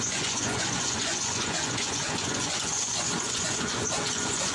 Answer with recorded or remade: remade